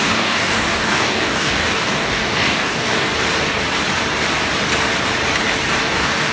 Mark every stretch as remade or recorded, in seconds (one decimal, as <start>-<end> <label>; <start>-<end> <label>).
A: 0.0-3.1 remade; 3.1-5.8 recorded; 5.8-6.3 remade